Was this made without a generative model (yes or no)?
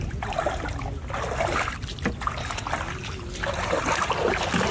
yes